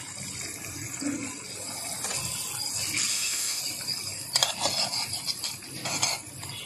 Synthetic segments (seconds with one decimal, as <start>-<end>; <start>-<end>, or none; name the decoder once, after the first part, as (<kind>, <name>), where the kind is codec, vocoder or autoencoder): 3.1-3.6 (autoencoder, DAC-VAE)